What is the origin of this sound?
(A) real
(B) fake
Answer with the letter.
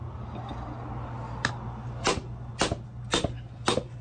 A